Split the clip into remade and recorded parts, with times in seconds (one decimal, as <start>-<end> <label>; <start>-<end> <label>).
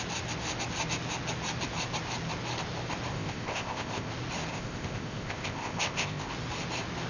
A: 0.0-3.1 recorded; 3.1-4.1 remade; 4.1-4.5 recorded; 4.5-6.3 remade; 6.3-7.1 recorded